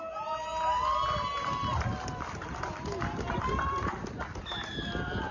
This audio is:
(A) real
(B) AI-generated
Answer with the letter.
A